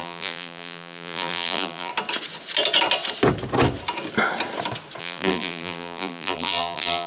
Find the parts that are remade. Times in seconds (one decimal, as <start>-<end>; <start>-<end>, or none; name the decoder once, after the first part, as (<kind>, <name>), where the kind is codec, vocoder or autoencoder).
0.0-1.9 (vocoder, BigVGAN v2); 5.0-7.1